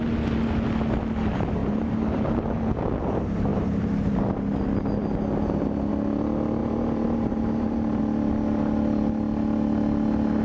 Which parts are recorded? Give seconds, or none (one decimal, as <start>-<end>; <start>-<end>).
0.0-1.6; 2.7-3.5; 4.2-6.6; 8.0-10.4